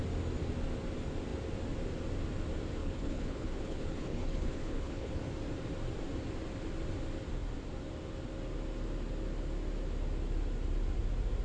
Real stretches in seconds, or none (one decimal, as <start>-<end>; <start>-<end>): 0.0-2.8; 5.2-11.4